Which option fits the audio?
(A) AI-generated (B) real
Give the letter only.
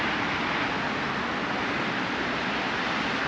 B